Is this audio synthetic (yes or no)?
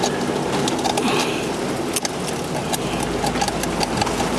no